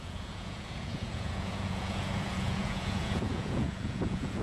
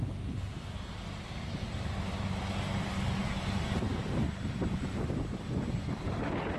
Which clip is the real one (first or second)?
second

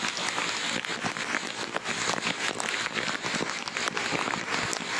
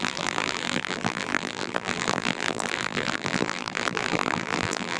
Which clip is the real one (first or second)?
first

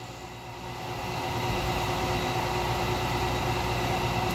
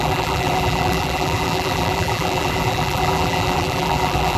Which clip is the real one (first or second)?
first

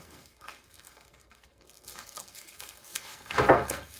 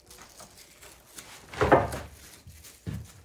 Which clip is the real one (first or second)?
second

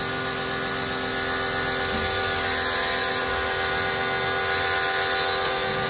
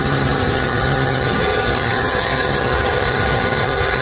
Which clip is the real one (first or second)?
first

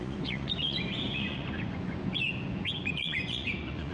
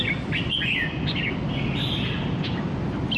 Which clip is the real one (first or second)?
second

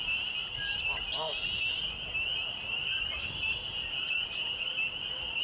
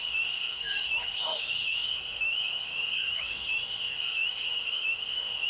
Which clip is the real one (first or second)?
first